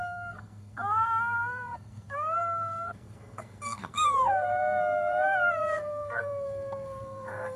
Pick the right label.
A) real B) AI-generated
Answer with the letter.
B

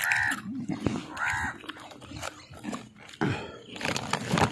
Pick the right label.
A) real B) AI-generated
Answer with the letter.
A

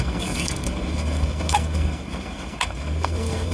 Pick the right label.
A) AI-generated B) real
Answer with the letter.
A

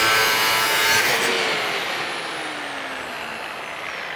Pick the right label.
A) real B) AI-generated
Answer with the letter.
A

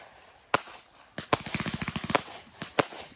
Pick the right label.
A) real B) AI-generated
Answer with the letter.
A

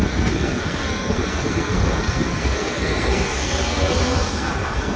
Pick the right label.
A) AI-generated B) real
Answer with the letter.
A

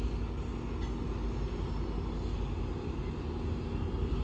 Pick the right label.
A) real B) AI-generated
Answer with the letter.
A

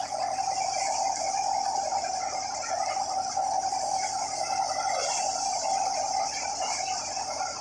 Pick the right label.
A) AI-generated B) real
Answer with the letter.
B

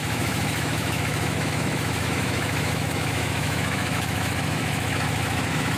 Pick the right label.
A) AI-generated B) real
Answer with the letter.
A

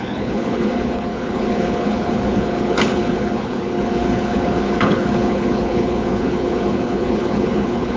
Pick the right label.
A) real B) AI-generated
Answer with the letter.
B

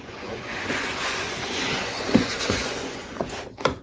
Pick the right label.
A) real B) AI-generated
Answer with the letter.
B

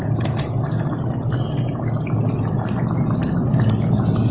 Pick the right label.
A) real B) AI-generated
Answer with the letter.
A